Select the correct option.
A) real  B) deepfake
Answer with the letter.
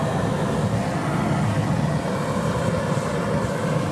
A